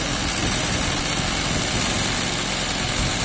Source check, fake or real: real